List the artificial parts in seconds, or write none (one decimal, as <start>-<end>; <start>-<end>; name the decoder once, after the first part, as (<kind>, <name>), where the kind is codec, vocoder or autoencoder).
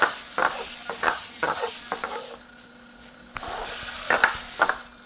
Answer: 1.0-1.7 (vocoder, HiFi-GAN)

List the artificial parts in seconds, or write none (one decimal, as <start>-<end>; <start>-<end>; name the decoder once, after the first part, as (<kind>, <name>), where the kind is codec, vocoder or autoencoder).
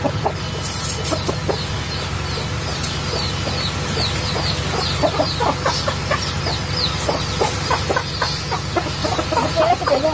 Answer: none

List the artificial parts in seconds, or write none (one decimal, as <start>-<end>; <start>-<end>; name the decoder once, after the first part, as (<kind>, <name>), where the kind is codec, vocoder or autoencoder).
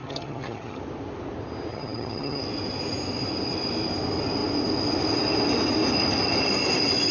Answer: 0.0-0.8 (vocoder, HiFi-GAN); 1.7-2.4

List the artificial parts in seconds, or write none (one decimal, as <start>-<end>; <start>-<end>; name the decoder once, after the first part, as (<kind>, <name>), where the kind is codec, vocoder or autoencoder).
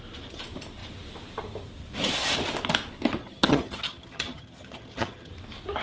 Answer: 3.2-5.3 (vocoder, HiFi-GAN)